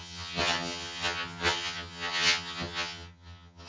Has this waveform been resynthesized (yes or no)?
yes